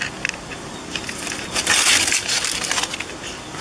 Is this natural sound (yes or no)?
yes